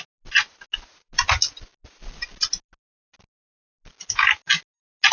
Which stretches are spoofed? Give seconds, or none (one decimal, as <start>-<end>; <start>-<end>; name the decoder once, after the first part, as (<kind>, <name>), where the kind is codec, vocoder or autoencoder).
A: none